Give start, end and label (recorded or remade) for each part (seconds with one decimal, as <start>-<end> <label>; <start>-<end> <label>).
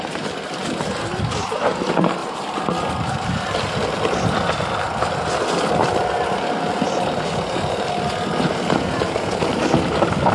0.0-10.3 recorded